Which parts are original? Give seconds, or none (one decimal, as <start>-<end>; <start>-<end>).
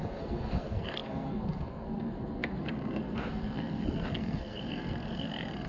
none